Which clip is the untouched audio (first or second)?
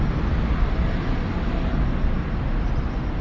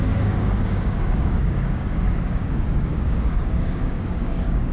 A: first